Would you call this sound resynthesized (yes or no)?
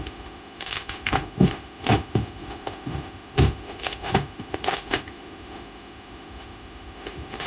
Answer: yes